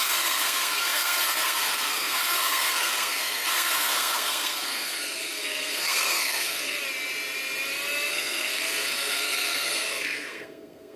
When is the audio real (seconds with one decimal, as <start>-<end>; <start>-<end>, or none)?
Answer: 6.8-8.1